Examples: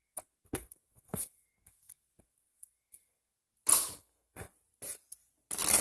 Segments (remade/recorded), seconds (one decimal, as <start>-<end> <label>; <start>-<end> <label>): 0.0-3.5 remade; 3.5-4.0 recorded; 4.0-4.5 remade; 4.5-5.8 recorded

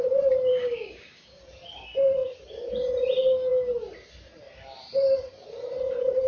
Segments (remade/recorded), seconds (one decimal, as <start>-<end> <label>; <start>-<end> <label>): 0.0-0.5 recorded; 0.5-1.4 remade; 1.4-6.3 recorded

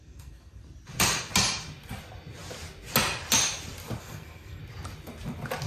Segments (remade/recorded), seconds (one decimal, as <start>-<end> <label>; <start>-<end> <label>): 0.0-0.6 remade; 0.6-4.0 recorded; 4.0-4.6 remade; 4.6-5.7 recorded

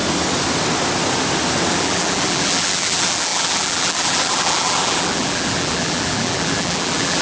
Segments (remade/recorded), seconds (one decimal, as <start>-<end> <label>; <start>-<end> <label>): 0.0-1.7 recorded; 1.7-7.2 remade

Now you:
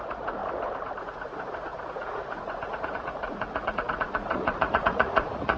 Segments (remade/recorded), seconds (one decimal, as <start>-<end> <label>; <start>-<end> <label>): 0.0-0.4 remade; 0.4-1.0 recorded; 1.0-5.6 remade

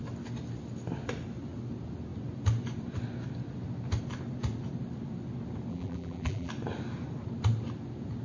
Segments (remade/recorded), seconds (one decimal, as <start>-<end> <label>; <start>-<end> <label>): 0.0-5.7 recorded; 5.7-6.5 remade; 6.5-8.2 recorded